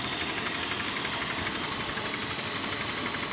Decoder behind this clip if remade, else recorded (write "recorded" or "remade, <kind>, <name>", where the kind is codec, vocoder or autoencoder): recorded